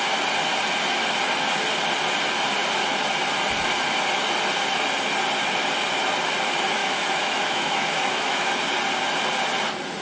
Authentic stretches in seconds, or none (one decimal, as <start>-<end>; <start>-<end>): 0.0-6.8; 8.5-10.0